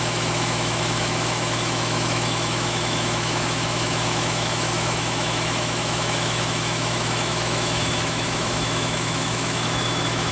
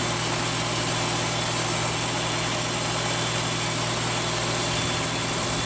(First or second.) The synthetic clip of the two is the first